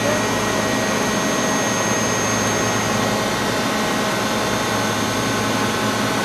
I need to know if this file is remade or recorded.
recorded